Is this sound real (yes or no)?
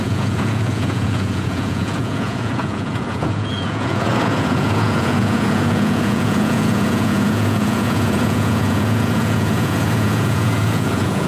no